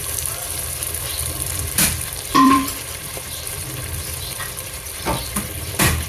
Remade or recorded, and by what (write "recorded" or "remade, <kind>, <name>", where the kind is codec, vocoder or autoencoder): remade, vocoder, BigVGAN v2